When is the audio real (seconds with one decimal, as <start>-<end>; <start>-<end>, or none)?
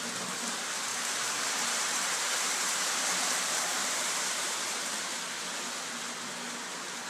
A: 0.0-0.9; 5.2-7.1